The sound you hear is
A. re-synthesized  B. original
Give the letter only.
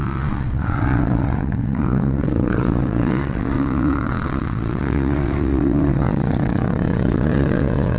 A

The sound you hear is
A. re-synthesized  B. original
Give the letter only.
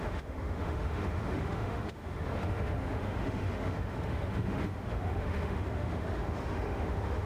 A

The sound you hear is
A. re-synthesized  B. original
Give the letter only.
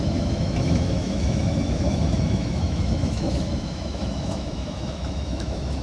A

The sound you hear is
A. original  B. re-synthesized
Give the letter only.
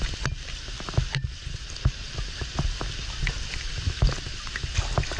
A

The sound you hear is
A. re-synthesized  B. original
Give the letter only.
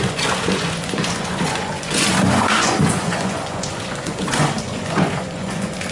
A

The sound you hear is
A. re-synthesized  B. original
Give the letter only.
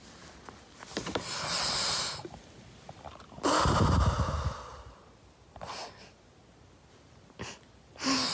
B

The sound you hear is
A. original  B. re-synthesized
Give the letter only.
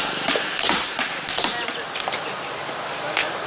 A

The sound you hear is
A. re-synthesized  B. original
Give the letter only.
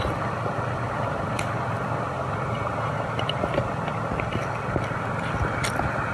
B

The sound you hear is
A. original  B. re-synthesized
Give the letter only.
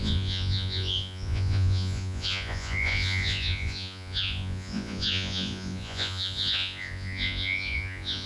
B